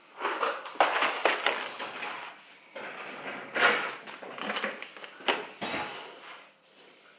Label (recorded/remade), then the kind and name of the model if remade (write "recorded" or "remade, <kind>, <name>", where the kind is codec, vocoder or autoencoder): recorded